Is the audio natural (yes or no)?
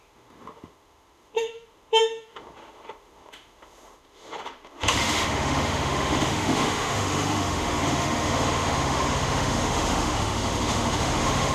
no